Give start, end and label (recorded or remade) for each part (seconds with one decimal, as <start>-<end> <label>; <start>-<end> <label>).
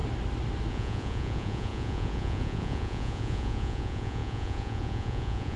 0.0-0.7 recorded; 0.7-5.6 remade